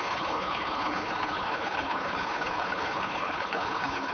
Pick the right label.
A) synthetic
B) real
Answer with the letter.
A